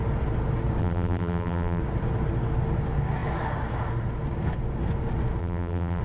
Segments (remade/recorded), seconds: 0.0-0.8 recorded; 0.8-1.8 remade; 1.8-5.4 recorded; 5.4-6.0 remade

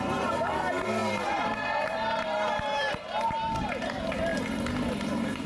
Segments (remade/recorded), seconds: 0.0-4.3 remade; 4.3-5.0 recorded; 5.0-5.5 remade

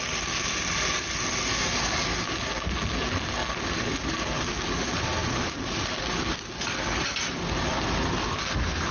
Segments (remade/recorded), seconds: 0.0-5.2 recorded; 5.2-5.9 remade; 5.9-8.9 recorded

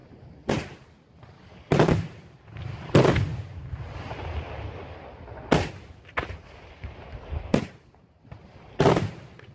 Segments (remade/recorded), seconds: 0.0-2.2 recorded; 2.2-3.3 remade; 3.3-6.7 recorded; 6.7-9.5 remade

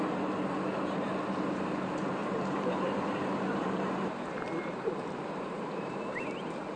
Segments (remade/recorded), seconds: 0.0-2.2 recorded; 2.2-6.2 remade; 6.2-6.8 recorded

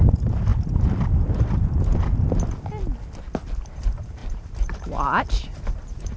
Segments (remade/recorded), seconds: 0.0-0.5 remade; 0.5-1.3 recorded; 1.3-1.9 remade; 1.9-3.5 recorded; 3.5-6.2 remade

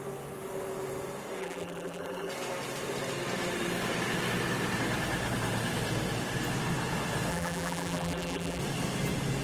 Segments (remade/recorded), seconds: 0.0-1.4 recorded; 1.4-2.3 remade; 2.3-7.3 recorded; 7.3-8.6 remade; 8.6-9.4 recorded

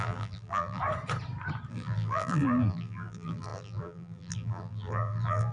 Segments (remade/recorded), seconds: 0.0-0.8 remade; 0.8-1.7 recorded; 1.7-5.5 remade